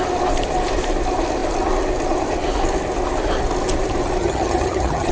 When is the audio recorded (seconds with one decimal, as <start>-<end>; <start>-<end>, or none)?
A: 0.0-4.2